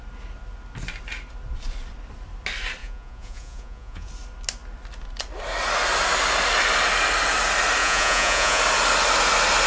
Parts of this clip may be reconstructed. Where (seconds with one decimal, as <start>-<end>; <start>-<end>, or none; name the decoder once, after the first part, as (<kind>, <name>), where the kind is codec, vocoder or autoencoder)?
2.8-4.1 (vocoder, Vocos); 7.8-8.6

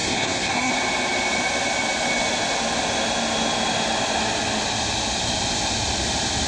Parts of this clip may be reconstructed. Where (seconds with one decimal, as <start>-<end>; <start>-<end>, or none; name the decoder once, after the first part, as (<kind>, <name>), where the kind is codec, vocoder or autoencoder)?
0.0-0.7 (codec, SNAC)

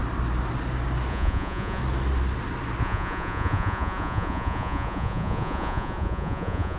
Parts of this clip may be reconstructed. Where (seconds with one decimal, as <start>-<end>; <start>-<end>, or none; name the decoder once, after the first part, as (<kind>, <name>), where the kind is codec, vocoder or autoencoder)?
1.1-1.8 (vocoder, Vocos); 2.8-6.8

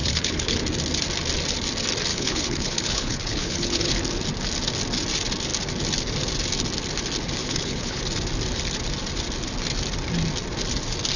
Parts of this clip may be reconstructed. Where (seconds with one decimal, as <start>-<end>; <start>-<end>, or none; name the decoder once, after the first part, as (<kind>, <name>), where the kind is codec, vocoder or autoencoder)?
0.0-0.6 (codec, HILCodec); 2.1-3.9; 7.4-8.0

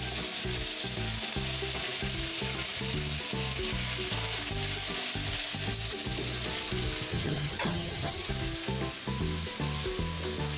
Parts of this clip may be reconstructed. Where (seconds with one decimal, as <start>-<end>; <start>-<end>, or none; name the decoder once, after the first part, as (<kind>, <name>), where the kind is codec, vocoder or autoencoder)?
7.1-8.3 (vocoder, HiFi-GAN)

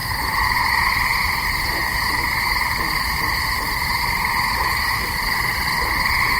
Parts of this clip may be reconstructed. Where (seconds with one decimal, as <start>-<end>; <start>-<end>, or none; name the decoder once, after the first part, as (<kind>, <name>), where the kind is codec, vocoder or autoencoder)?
0.0-6.4 (vocoder, BigVGAN v2)